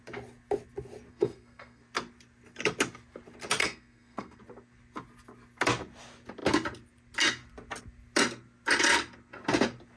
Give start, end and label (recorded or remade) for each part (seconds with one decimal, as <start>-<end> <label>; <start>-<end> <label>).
0.0-1.1 recorded; 1.1-1.8 remade; 1.8-3.6 recorded; 3.6-4.4 remade; 4.4-10.0 recorded